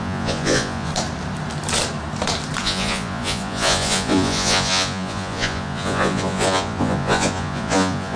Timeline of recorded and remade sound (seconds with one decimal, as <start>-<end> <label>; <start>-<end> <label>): 0.0-0.9 remade; 0.9-2.6 recorded; 2.6-8.2 remade